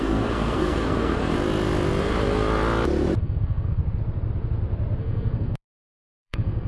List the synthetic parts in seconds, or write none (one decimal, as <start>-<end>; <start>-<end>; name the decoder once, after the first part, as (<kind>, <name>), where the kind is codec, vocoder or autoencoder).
0.0-1.2 (codec, SNAC); 3.2-3.8; 5.0-6.7